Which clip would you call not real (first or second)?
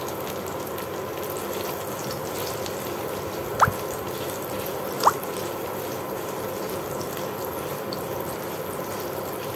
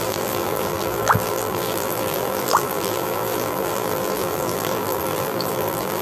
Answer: second